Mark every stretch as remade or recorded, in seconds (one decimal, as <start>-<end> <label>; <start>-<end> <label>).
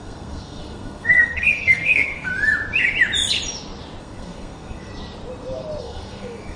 0.0-2.3 remade; 2.3-4.0 recorded; 4.0-4.9 remade; 4.9-5.8 recorded; 5.8-6.6 remade